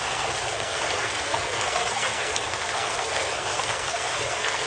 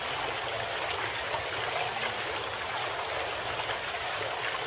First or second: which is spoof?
first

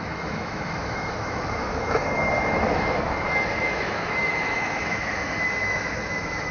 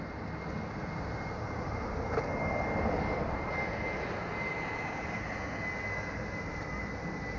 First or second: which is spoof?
first